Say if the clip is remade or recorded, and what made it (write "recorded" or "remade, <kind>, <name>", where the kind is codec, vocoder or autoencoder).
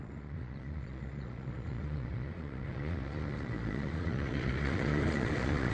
remade, vocoder, Vocos